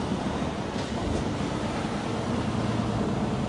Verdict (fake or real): real